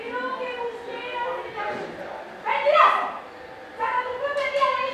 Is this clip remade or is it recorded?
recorded